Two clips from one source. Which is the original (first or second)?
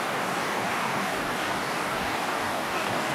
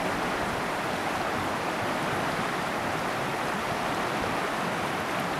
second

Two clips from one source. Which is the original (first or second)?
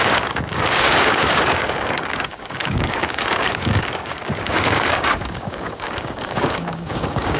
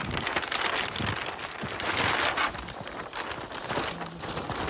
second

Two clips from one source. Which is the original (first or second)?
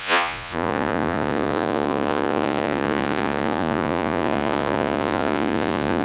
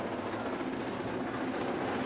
second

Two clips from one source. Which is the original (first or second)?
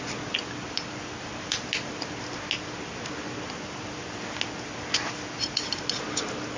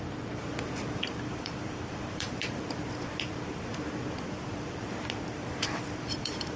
first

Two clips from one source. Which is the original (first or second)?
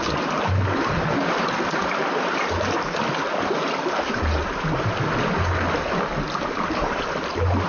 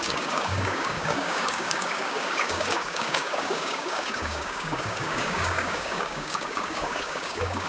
first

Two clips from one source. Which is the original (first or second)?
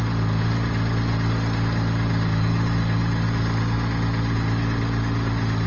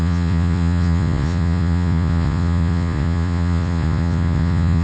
first